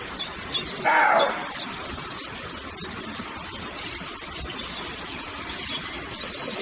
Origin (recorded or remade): recorded